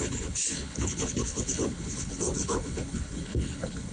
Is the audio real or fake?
fake